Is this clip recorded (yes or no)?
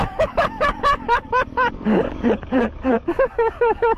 no